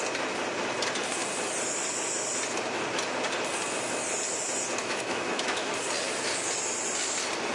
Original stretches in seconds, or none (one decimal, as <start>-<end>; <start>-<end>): 0.0-4.8; 5.7-7.5